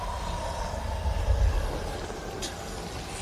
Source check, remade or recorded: recorded